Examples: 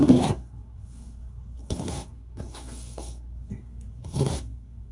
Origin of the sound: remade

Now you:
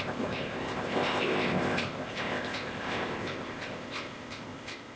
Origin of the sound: remade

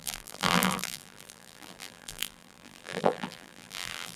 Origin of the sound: remade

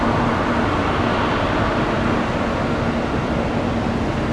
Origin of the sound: recorded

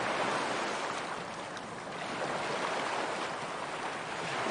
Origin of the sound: recorded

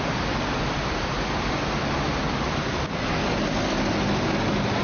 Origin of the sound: recorded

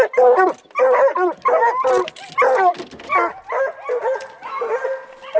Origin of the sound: recorded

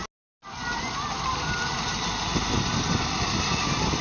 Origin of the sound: recorded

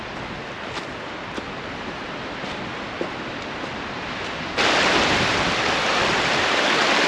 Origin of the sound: recorded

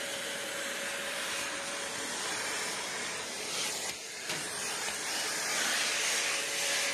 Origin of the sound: remade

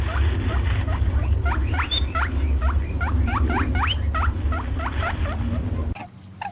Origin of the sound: recorded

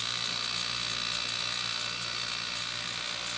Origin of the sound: recorded